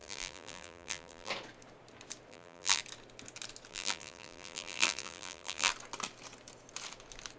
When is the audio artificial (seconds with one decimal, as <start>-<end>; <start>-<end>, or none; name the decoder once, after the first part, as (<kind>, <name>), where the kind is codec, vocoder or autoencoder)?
0.0-1.3 (vocoder, BigVGAN v2); 2.3-2.8; 3.7-5.7